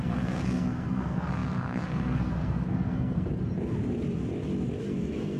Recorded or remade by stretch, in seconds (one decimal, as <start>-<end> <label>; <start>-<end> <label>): 0.0-3.3 remade; 3.3-4.8 recorded; 4.8-5.4 remade